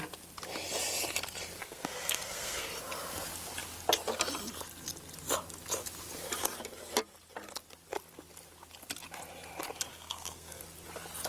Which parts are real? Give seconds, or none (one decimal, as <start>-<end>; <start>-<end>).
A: 0.0-1.6; 2.7-9.9; 10.6-11.3